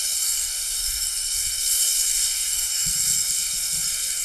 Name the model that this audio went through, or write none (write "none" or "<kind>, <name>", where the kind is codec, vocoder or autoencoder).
codec, SNAC